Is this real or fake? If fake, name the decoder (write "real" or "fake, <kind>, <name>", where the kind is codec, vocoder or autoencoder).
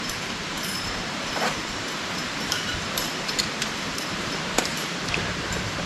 fake, vocoder, BigVGAN v2